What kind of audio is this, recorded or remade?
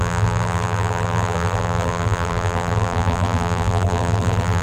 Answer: remade